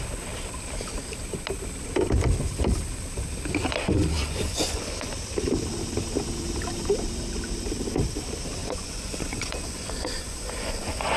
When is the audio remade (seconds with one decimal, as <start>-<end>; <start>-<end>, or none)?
4.2-5.1; 8.6-11.2